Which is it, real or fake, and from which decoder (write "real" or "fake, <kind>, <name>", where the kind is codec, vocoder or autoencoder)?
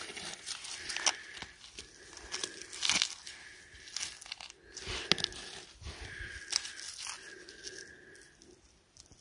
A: real